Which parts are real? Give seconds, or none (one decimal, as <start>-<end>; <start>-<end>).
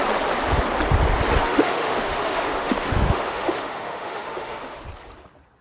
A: 0.0-1.4; 4.8-5.6